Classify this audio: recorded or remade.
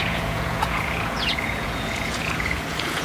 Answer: remade